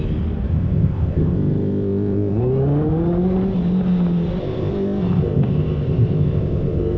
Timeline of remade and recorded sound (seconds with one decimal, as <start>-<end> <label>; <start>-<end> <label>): 0.0-0.5 recorded; 0.5-2.4 remade; 2.4-4.4 recorded; 4.4-7.0 remade